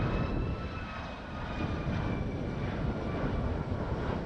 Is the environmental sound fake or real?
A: real